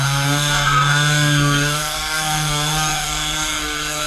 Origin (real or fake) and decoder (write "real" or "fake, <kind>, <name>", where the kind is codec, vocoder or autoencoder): fake, codec, SNAC